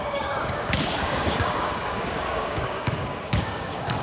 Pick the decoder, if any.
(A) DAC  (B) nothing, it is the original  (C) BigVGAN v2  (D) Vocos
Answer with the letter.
A